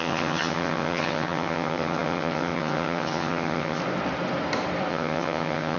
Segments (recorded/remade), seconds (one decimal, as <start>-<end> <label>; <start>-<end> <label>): 0.0-3.8 remade; 3.8-4.9 recorded; 4.9-5.8 remade